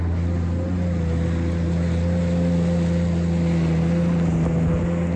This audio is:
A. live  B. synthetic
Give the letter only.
A